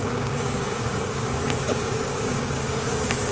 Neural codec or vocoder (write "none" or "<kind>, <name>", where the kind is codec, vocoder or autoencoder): codec, DAC